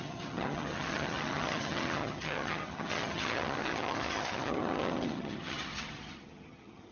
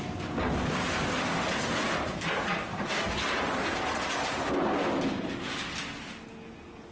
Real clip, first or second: second